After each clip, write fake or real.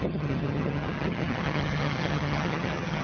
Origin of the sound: fake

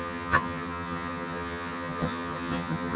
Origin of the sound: fake